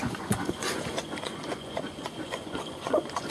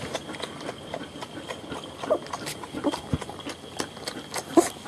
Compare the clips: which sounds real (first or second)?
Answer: second